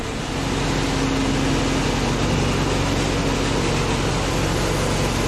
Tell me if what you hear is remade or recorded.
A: recorded